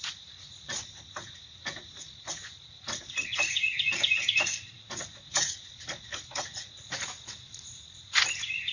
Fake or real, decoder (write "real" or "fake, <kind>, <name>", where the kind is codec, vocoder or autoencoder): fake, vocoder, Vocos